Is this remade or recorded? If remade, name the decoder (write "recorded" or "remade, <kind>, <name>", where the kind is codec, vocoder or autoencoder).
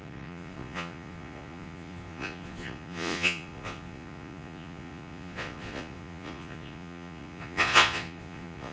remade, vocoder, Vocos